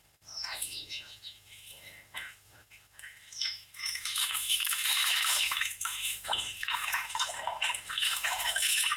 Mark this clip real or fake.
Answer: fake